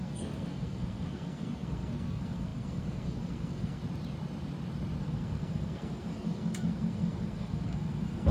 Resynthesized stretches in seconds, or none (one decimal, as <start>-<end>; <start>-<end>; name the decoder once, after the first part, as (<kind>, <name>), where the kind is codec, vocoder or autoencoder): 0.0-3.8 (codec, SNAC); 5.0-8.3